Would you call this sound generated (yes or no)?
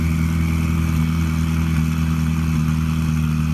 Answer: no